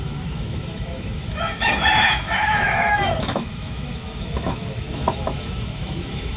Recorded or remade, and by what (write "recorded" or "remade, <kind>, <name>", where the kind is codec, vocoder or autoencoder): remade, autoencoder, DAC-VAE